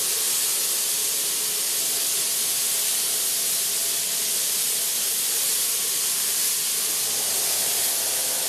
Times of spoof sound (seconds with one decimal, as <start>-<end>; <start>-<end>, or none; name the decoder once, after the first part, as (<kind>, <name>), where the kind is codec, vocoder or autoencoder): 3.8-6.0 (vocoder, BigVGAN v2)